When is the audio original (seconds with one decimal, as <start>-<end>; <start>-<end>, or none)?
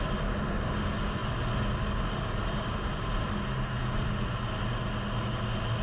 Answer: 0.0-5.8